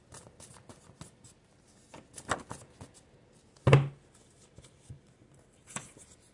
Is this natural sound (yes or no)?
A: yes